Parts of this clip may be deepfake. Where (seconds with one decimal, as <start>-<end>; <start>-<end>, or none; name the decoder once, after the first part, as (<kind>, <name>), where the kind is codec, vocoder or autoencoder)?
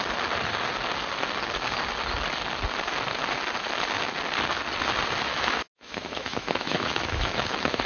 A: 5.3-7.9 (autoencoder, DAC-VAE)